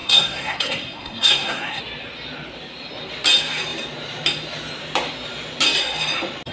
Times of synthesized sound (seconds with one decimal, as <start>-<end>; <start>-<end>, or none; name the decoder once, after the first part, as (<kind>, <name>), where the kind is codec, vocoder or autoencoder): 0.0-1.8 (codec, SNAC)